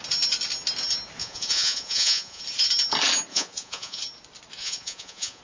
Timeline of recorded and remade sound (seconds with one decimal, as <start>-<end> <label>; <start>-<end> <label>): 0.0-1.2 recorded; 1.2-2.4 remade; 2.4-3.3 recorded; 3.3-4.0 remade; 4.0-4.6 recorded; 4.6-5.4 remade